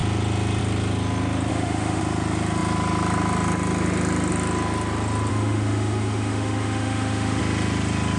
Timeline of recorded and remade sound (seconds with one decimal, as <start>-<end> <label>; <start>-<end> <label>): 0.0-1.5 recorded; 1.5-2.0 remade; 2.0-5.3 recorded; 5.3-7.4 remade; 7.4-8.2 recorded